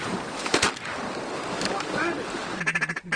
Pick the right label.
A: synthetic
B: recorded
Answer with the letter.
B